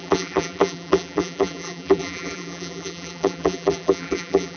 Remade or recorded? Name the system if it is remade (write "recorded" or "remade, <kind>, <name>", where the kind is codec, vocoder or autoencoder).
remade, vocoder, BigVGAN v2